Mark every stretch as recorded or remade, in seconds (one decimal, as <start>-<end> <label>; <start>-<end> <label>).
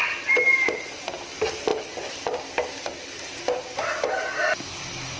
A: 0.0-5.2 recorded